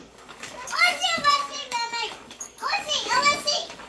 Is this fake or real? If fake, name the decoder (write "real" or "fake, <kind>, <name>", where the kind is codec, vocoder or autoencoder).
fake, codec, DAC